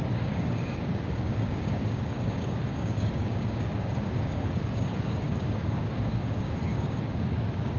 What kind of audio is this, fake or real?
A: fake